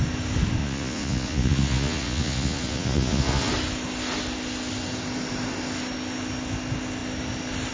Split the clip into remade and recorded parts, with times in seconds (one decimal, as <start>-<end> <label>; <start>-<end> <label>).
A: 0.0-0.6 recorded; 0.6-3.5 remade; 3.5-7.7 recorded